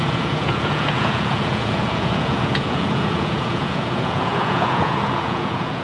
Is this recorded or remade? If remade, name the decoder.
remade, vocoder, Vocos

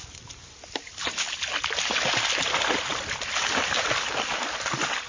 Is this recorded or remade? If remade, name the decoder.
recorded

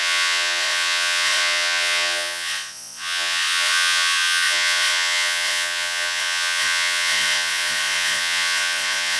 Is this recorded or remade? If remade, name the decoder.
remade, vocoder, Vocos